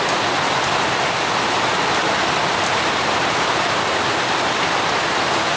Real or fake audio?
real